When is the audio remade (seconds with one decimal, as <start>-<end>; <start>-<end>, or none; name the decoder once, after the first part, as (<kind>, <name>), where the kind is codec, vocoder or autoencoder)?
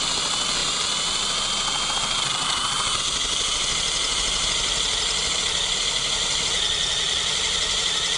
none